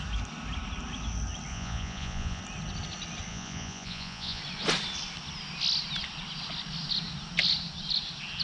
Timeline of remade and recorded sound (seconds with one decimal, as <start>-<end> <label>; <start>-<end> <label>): 0.0-1.5 recorded; 1.5-2.4 remade; 2.4-3.3 recorded; 3.3-4.4 remade; 4.4-8.4 recorded